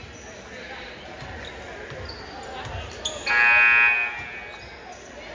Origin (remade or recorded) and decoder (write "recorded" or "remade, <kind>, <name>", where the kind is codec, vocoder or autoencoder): recorded